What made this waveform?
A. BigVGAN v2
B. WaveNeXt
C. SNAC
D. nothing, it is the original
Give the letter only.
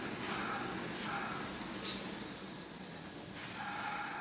D